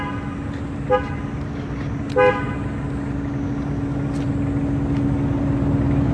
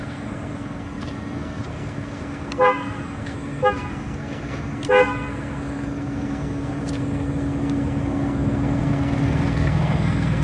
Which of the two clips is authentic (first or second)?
first